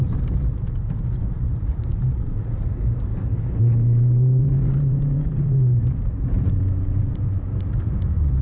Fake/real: fake